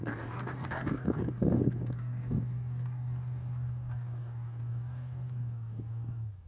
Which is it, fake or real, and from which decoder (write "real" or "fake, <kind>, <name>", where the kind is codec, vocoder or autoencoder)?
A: fake, codec, DAC